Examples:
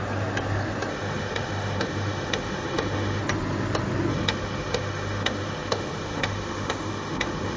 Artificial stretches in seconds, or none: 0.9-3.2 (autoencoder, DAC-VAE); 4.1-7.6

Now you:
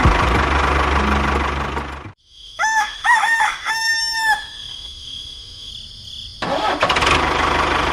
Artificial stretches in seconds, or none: 2.2-5.7 (autoencoder, DAC-VAE)

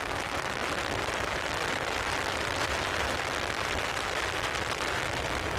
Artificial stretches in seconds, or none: none